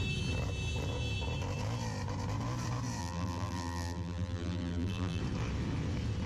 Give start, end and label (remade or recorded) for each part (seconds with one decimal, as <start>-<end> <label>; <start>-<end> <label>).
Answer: 0.0-3.0 recorded; 3.0-5.2 remade; 5.2-6.3 recorded

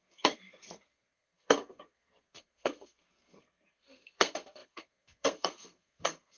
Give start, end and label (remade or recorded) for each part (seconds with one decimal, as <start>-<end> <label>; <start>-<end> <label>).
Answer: 0.0-6.4 remade

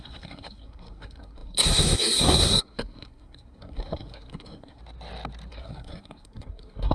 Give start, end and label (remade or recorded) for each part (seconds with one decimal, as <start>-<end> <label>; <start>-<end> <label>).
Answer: 0.0-4.8 remade; 4.8-5.5 recorded; 5.5-6.9 remade

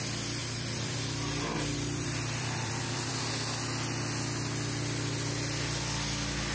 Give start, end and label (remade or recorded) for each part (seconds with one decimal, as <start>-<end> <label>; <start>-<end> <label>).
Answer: 0.0-0.4 recorded; 0.4-3.3 remade; 3.3-6.5 recorded

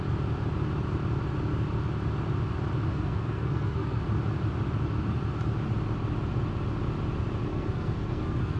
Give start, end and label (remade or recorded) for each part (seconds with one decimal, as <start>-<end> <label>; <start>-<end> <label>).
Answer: 0.0-2.9 recorded; 2.9-4.0 remade; 4.0-7.5 recorded; 7.5-8.6 remade

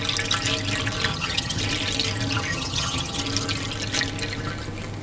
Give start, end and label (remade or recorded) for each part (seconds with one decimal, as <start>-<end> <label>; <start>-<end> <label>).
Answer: 0.0-1.1 recorded; 1.1-1.6 remade; 1.6-2.5 recorded; 2.5-3.2 remade; 3.2-5.0 recorded

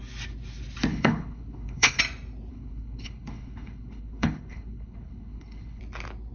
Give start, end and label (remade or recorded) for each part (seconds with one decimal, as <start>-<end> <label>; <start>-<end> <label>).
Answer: 0.0-0.9 recorded; 0.9-2.0 remade; 2.0-2.5 recorded; 2.5-5.8 remade; 5.8-6.3 recorded